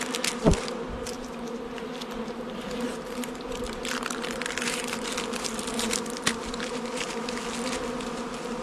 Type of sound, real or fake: real